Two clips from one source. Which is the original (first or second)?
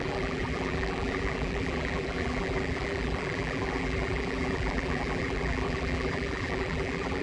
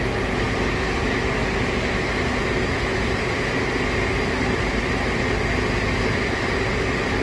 second